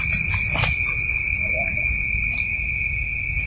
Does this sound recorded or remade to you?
recorded